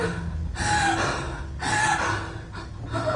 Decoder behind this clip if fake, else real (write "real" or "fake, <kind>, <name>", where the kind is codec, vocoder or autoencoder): real